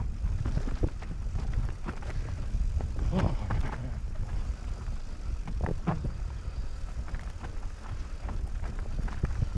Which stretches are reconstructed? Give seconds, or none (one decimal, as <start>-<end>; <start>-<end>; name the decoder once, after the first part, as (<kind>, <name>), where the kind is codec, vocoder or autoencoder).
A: 0.0-3.8 (vocoder, BigVGAN v2); 4.3-9.6